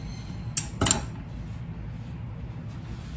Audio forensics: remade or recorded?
recorded